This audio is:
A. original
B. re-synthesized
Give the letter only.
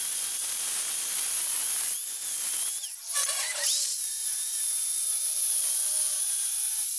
A